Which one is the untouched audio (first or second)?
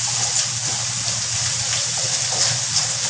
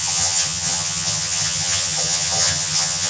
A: first